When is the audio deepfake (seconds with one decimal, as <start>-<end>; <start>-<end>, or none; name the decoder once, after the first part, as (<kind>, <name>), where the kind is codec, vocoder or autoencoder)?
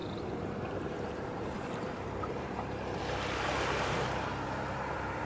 0.0-3.0 (vocoder, BigVGAN v2); 4.3-5.2